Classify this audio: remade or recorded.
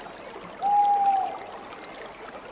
recorded